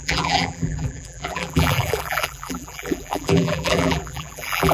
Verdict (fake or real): fake